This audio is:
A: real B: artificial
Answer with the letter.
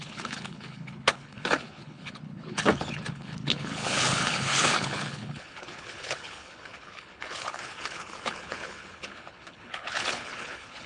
B